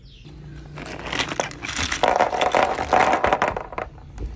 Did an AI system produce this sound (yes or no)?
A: no